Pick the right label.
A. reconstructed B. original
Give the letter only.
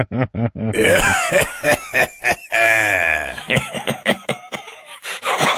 A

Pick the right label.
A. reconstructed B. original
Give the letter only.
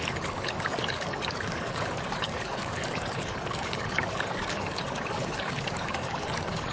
A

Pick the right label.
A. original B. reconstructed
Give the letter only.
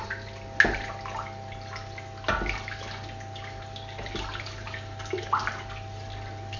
A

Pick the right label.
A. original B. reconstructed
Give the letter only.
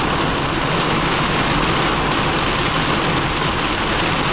A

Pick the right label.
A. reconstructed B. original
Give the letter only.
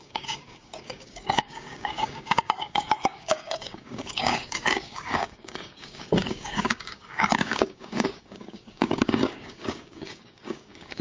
A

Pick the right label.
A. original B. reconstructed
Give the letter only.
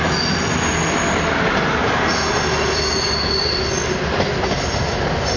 A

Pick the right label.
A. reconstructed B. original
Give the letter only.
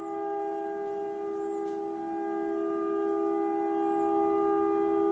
B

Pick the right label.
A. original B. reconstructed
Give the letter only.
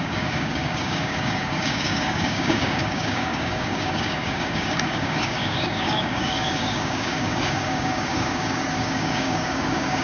B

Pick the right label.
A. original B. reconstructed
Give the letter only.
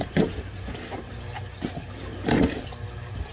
A